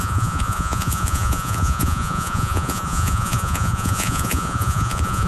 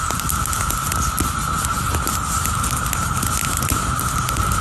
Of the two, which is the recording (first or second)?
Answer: second